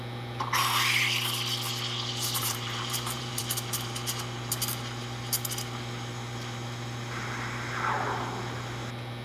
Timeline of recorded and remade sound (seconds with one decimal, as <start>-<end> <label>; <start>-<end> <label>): 0.0-2.4 recorded; 2.4-3.4 remade; 3.4-9.2 recorded